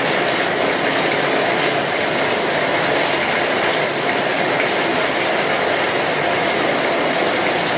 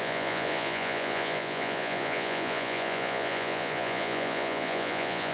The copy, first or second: second